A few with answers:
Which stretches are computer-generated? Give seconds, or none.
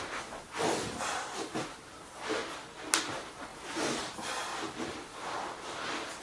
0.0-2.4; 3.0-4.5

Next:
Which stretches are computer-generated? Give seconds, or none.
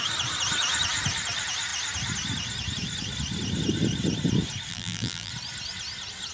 4.7-5.3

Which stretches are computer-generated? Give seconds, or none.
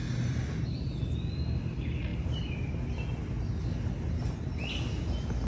2.1-2.7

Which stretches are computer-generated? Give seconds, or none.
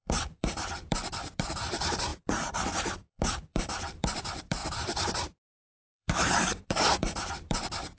0.0-8.0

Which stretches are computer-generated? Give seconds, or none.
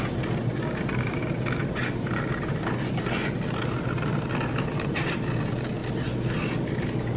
5.8-6.8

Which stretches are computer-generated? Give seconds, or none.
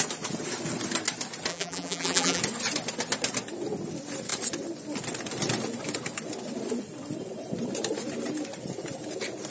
1.5-2.4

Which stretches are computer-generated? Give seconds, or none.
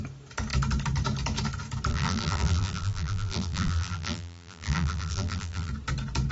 1.9-5.7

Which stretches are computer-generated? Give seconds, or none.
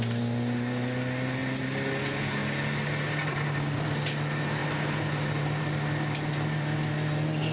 none